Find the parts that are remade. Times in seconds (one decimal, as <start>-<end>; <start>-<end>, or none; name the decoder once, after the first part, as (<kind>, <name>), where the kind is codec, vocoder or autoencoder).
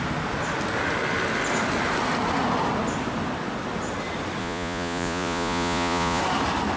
4.4-6.2 (vocoder, Vocos)